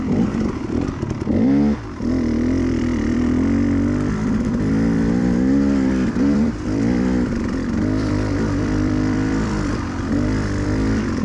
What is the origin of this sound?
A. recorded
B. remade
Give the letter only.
B